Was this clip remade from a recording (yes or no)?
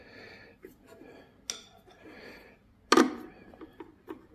no